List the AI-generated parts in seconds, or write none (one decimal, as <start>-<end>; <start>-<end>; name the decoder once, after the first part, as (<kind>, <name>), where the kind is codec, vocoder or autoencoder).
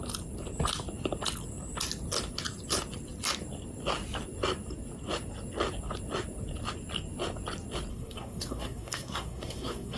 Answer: 7.9-10.0 (codec, SNAC)